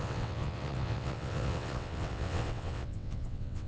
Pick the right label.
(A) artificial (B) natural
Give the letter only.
A